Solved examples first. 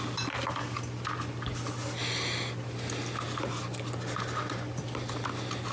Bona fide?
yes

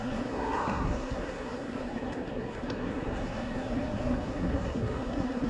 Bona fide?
no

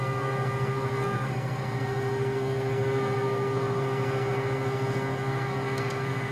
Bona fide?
no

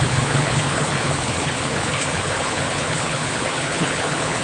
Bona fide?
no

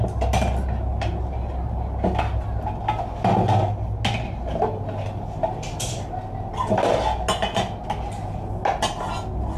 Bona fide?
yes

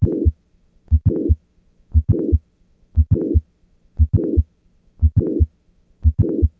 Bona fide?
no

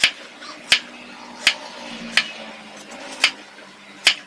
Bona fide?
yes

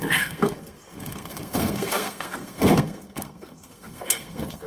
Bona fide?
no